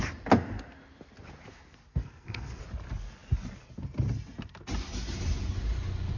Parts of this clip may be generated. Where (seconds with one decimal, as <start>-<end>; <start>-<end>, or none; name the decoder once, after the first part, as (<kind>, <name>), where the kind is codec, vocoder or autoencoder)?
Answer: 1.9-2.6 (codec, SNAC)